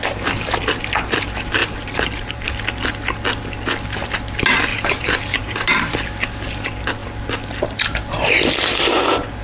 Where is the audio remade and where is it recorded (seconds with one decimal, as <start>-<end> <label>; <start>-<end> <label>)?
0.0-1.6 recorded; 1.6-2.5 remade; 2.5-4.7 recorded; 4.7-5.8 remade; 5.8-9.4 recorded

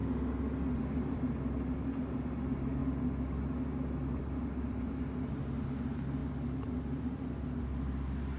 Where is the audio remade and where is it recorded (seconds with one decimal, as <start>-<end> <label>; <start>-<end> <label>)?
0.0-8.4 recorded

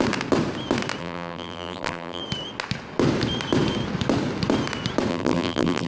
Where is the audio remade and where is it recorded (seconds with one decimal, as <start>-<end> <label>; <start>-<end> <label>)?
0.0-1.0 recorded; 1.0-2.2 remade; 2.2-5.1 recorded; 5.1-5.9 remade

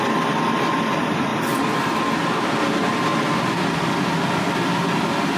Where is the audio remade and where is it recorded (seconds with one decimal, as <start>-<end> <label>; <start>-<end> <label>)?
0.0-5.4 recorded

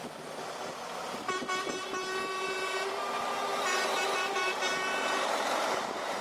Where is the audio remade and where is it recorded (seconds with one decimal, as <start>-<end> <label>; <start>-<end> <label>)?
0.0-3.1 recorded; 3.1-6.2 remade